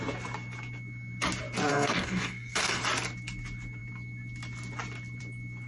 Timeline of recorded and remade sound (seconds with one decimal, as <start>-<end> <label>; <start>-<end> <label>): 0.0-1.7 recorded; 1.7-2.8 remade; 2.8-5.7 recorded